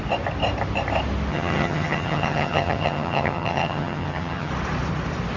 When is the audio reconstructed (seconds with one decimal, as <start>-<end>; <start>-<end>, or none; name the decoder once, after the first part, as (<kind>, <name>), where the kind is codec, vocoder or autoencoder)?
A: 1.3-4.5 (vocoder, HiFi-GAN)